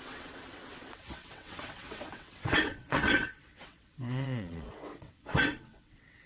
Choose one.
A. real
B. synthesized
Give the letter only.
B